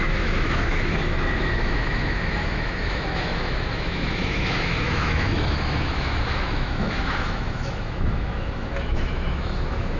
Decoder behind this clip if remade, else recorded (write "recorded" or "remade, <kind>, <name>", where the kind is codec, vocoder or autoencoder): remade, autoencoder, DAC-VAE